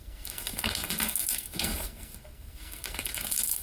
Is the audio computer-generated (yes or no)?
yes